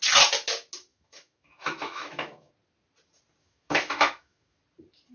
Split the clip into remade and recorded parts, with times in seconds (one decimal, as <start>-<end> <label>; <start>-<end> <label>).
0.0-0.9 recorded; 0.9-2.5 remade; 2.5-3.4 recorded; 3.4-4.6 remade; 4.6-5.1 recorded